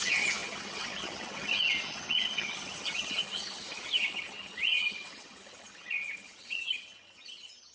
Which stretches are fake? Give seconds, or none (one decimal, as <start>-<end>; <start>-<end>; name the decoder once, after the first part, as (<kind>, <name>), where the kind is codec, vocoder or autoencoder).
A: 0.0-7.7 (vocoder, HiFi-GAN)